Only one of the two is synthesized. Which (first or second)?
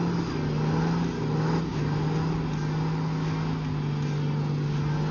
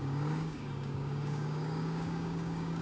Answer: second